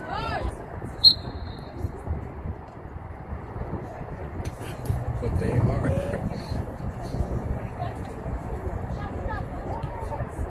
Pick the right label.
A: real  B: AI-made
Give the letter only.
B